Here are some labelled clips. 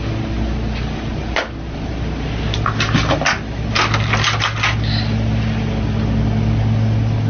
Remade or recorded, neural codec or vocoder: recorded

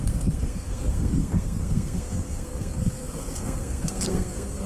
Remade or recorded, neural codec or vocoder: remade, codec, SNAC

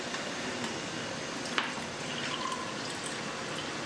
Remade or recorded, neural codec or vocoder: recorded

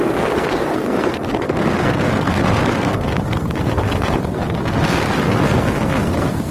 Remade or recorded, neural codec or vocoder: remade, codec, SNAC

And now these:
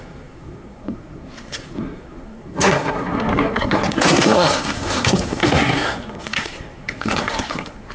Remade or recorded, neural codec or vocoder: remade, codec, SNAC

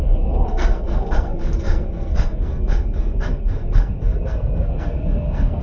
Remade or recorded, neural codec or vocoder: remade, codec, SNAC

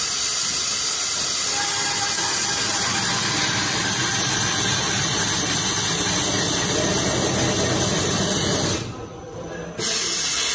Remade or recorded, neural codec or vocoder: recorded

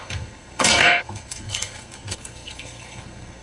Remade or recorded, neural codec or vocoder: remade, codec, SNAC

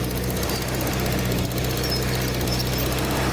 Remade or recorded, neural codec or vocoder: recorded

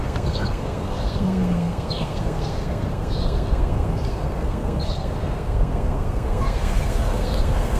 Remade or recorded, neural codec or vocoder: remade, codec, SNAC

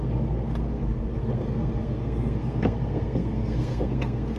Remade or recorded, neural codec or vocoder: remade, codec, SNAC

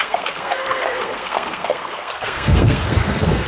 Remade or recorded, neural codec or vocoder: remade, codec, SNAC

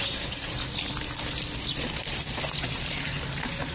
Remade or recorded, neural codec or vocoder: recorded